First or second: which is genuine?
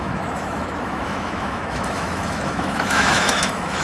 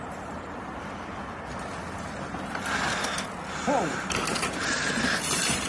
second